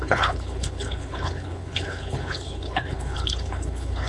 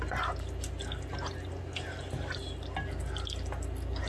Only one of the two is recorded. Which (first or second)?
second